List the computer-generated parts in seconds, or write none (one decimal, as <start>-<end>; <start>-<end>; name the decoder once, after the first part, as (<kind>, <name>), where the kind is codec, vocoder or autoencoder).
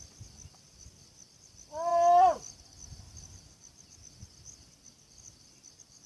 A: none